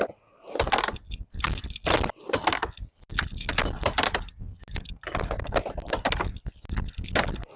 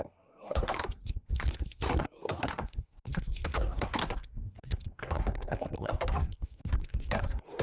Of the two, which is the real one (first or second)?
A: first